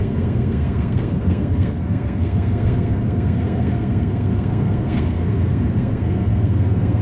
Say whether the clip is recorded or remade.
remade